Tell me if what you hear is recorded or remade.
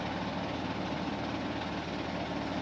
recorded